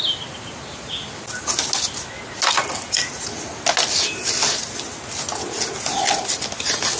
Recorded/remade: recorded